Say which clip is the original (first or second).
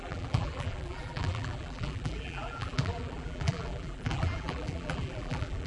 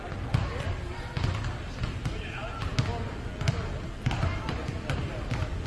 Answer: second